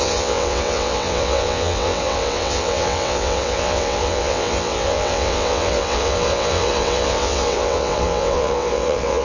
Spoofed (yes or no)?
yes